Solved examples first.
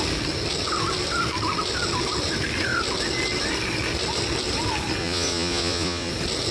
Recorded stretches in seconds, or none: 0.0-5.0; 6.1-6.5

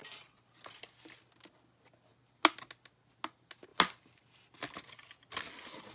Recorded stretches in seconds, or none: 0.0-5.9

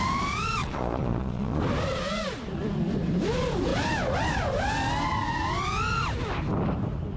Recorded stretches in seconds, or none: 0.0-0.6; 1.6-7.2

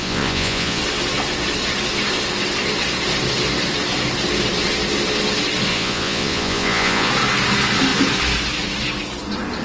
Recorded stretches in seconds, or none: 0.8-5.7; 7.1-9.6

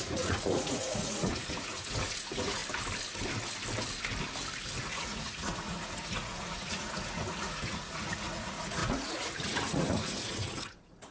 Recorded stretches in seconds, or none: 2.6-4.8

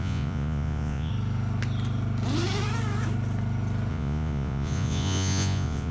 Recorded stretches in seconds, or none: 1.1-3.9

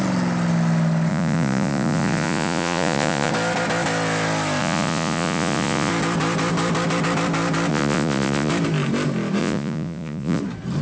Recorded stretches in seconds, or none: 0.0-1.1; 3.3-4.6; 5.9-7.7; 8.5-9.4; 10.4-10.8